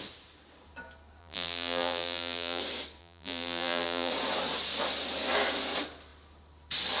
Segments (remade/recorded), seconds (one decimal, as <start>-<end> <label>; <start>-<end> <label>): 0.0-1.2 recorded; 1.2-2.6 remade; 2.6-3.0 recorded; 3.0-4.1 remade; 4.1-7.0 recorded